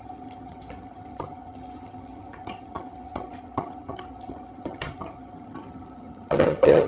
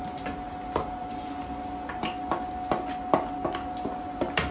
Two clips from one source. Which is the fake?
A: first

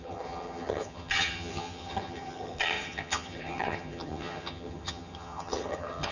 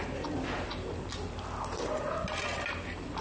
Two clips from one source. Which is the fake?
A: first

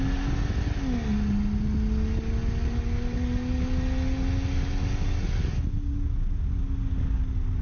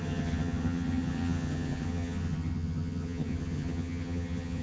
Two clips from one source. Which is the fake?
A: second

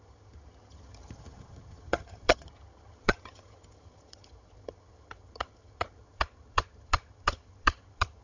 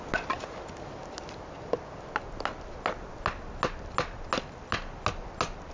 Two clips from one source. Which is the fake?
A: first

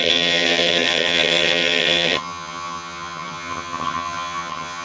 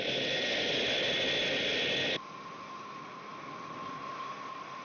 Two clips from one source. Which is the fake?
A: first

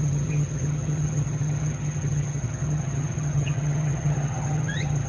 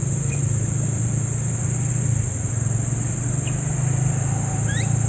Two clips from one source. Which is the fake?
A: first